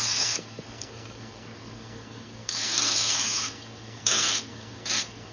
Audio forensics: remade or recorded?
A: remade